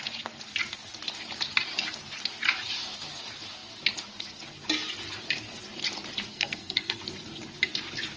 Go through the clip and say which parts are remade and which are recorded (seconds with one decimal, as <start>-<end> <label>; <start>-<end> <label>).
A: 0.0-6.3 recorded; 6.3-7.0 remade; 7.0-8.2 recorded